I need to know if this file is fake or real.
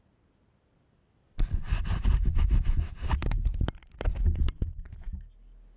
real